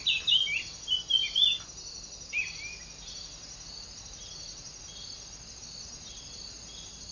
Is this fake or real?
real